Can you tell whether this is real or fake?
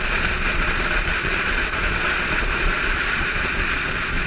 fake